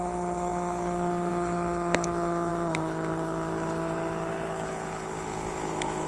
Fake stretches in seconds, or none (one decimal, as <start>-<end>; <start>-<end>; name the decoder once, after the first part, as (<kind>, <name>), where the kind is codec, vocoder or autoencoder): 0.0-6.1 (codec, HILCodec)